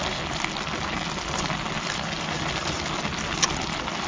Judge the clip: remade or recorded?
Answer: recorded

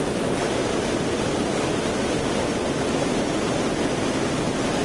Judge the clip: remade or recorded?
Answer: recorded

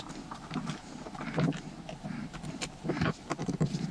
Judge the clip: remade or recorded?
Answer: remade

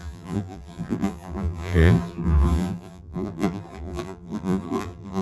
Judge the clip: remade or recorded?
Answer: remade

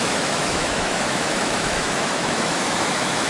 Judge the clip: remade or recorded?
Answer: remade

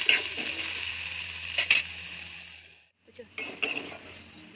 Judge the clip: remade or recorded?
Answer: recorded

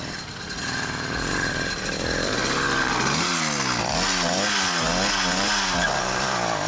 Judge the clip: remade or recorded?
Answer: recorded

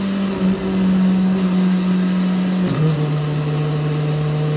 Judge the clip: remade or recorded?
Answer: recorded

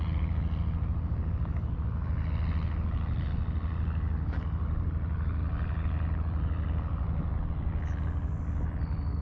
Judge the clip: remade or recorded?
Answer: recorded